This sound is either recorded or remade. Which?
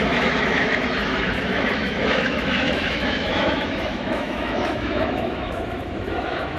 remade